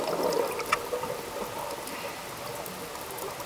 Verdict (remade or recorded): recorded